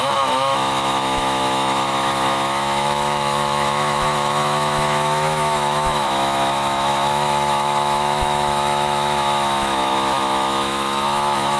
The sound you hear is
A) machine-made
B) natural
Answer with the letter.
A